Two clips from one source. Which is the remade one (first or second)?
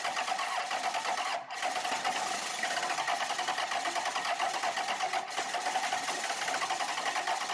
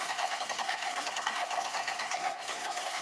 second